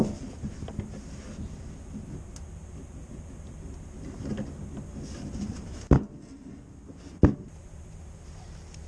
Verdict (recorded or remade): recorded